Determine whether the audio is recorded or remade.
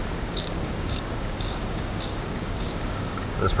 remade